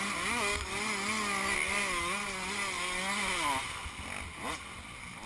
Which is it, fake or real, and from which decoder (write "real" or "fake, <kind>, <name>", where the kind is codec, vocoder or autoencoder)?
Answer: real